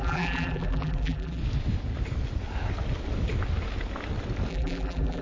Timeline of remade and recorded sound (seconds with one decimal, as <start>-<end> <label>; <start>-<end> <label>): 0.0-1.4 remade; 1.4-4.5 recorded; 4.5-5.2 remade